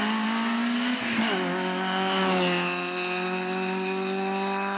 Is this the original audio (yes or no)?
yes